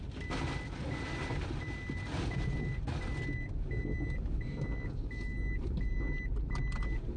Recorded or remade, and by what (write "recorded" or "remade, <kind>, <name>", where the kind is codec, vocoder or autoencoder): recorded